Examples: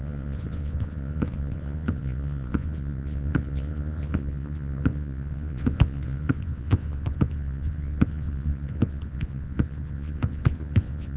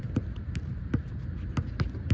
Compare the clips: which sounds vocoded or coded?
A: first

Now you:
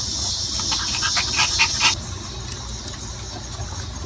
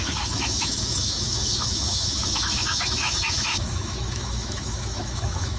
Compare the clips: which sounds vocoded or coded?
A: second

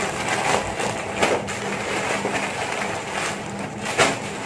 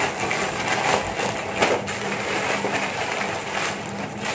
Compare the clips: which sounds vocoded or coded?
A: second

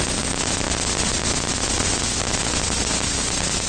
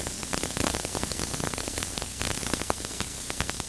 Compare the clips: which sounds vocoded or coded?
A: second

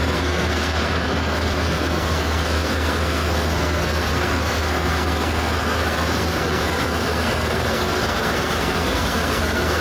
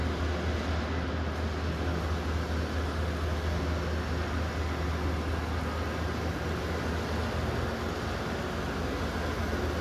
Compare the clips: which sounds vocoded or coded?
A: first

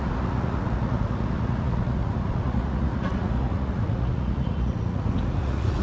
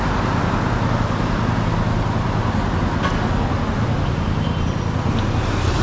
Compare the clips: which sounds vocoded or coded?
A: first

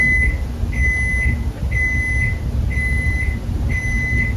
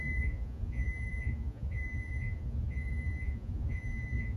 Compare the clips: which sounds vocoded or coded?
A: second